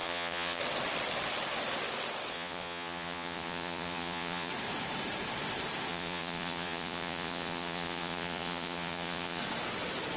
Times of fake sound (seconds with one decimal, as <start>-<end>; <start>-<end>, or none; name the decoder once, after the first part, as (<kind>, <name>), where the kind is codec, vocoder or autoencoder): 0.0-0.6 (vocoder, Vocos); 2.3-4.5; 5.9-9.4